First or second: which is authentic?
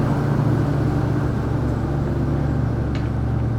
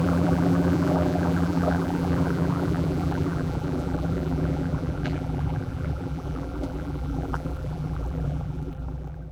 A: first